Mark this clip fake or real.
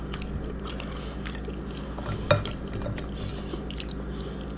real